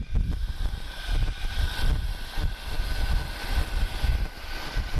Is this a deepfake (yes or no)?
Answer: no